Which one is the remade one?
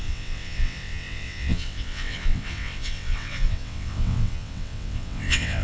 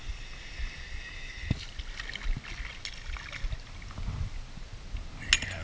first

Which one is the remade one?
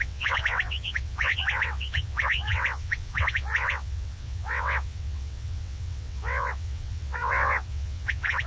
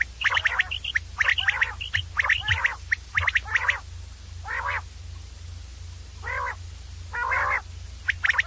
first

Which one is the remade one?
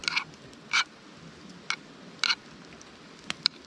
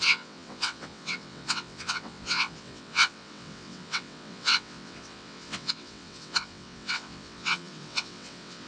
second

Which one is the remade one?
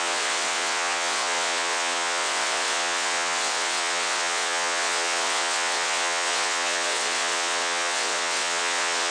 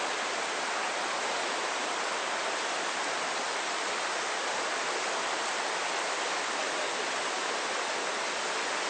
first